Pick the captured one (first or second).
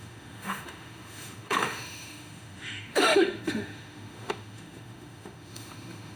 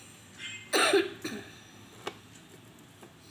second